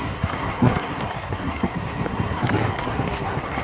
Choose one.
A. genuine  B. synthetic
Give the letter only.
B